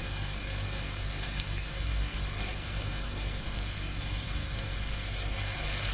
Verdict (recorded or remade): remade